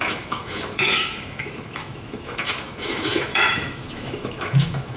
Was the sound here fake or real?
fake